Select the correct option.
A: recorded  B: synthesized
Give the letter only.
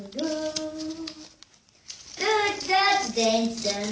A